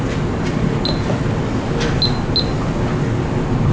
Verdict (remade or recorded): recorded